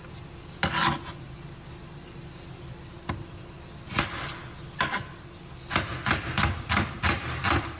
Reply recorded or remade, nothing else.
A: recorded